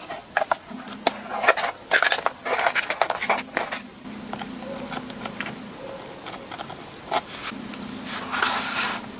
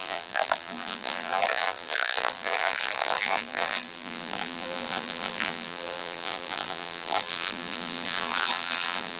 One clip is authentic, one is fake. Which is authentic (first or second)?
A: first